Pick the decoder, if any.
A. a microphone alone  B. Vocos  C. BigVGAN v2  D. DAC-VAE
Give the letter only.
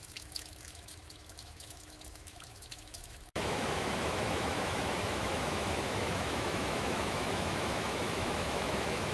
D